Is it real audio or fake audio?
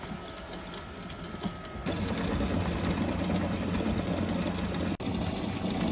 real